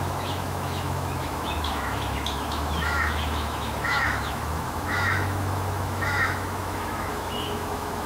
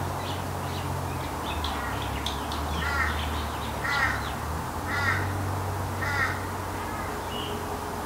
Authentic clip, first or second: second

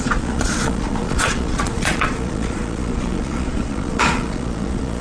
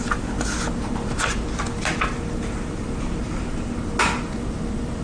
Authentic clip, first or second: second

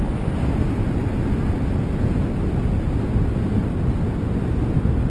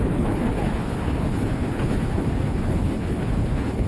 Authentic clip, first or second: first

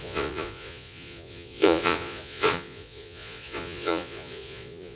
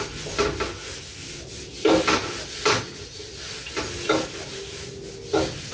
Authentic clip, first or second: second